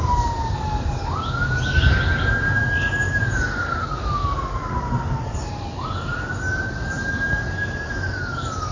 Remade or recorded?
recorded